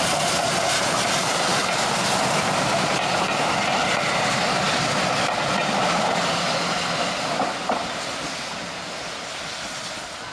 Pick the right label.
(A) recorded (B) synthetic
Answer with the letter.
A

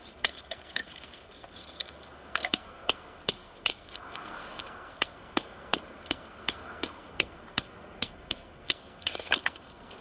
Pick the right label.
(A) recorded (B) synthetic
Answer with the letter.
B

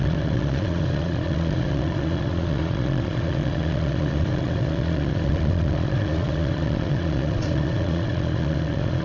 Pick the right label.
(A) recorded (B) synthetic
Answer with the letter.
B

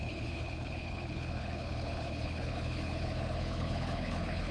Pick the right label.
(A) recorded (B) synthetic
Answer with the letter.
B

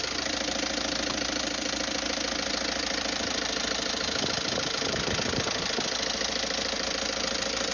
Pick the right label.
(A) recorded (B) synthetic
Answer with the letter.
A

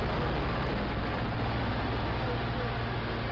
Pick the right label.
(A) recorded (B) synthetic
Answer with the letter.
A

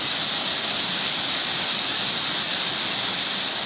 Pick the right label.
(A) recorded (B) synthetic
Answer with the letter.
A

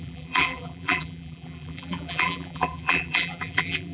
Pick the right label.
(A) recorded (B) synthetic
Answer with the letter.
B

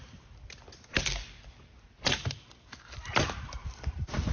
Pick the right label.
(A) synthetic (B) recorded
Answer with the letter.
B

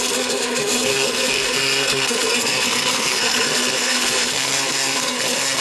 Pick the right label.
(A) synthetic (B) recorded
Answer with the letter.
A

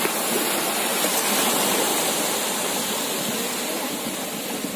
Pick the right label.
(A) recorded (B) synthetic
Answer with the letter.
A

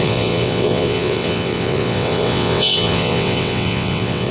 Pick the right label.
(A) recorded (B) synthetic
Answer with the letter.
B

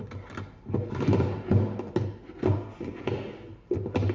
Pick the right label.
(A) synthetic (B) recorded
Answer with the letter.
B